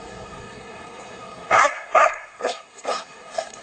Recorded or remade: remade